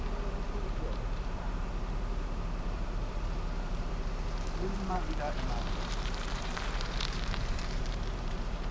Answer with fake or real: fake